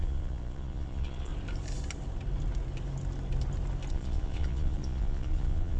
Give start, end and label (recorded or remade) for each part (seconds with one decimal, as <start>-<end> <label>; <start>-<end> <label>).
0.0-1.3 remade; 1.3-3.9 recorded; 3.9-5.8 remade